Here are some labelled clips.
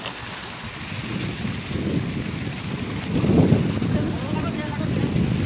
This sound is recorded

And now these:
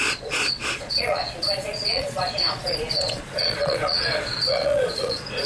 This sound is remade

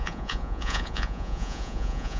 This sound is remade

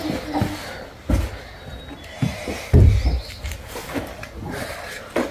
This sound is recorded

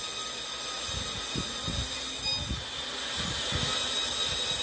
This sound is recorded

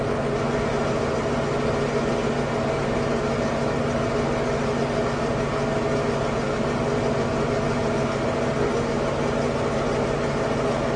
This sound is recorded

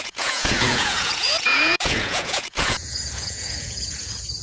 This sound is remade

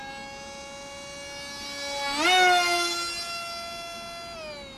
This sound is recorded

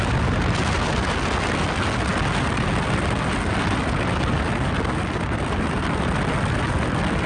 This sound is recorded